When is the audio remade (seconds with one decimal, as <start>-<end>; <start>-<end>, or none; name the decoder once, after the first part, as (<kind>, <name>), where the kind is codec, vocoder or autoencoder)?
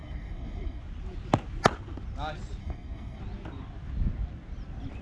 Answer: 0.0-0.8 (codec, SNAC); 2.6-3.2